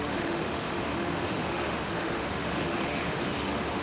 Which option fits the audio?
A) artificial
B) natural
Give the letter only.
A